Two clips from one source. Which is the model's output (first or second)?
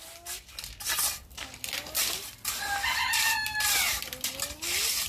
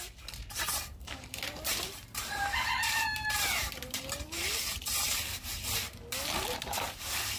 second